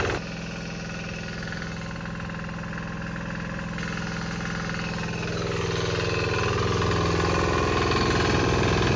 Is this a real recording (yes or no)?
yes